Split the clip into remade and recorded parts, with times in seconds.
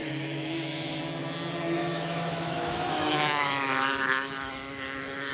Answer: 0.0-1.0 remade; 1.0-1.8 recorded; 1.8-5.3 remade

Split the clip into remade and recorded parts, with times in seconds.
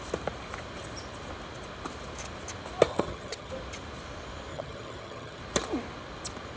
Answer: 0.0-2.9 recorded; 2.9-3.5 remade; 3.5-4.5 recorded; 4.5-5.4 remade; 5.4-6.6 recorded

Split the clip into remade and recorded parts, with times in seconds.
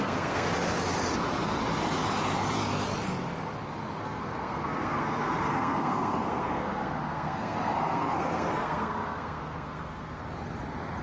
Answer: 0.0-0.5 remade; 0.5-4.0 recorded; 4.0-10.2 remade; 10.2-11.0 recorded